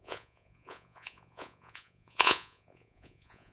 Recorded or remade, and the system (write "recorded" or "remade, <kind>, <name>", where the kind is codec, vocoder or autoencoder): remade, vocoder, Vocos